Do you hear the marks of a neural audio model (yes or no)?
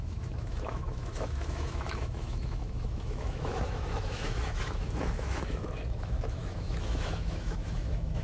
yes